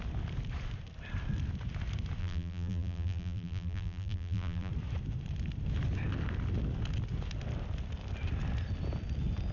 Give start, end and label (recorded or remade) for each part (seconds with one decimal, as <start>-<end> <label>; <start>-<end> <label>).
0.0-2.2 recorded; 2.2-4.7 remade; 4.7-9.5 recorded